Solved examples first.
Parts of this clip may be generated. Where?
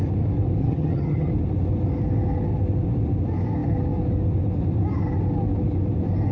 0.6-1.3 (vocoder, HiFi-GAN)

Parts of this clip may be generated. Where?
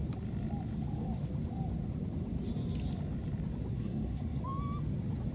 3.7-4.4 (codec, SNAC)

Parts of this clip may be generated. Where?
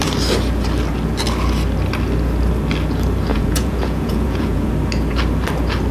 3.3-4.7 (vocoder, Vocos)